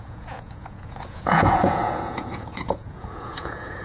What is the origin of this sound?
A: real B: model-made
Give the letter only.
B